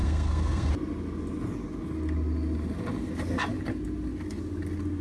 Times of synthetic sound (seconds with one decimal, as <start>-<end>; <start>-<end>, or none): 0.0-0.7